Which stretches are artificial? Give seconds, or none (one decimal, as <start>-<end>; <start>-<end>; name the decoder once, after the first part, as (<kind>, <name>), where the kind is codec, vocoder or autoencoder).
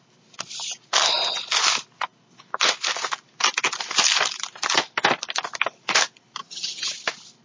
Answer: 6.4-6.9 (vocoder, HiFi-GAN)